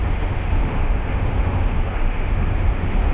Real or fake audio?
fake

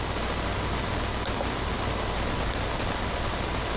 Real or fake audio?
real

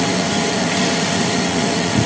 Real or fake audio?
fake